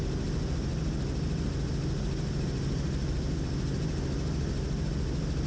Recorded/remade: recorded